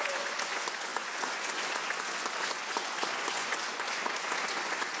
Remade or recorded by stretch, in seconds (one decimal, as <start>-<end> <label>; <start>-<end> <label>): 0.0-5.0 remade